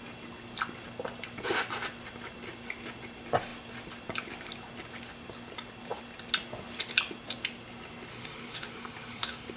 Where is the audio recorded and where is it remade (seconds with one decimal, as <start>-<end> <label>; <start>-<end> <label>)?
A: 0.0-8.1 recorded; 8.1-9.6 remade

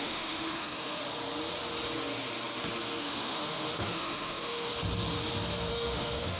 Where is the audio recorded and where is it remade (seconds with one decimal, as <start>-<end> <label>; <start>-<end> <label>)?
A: 0.0-1.0 remade; 1.0-3.0 recorded; 3.0-4.7 remade; 4.7-5.7 recorded; 5.7-6.4 remade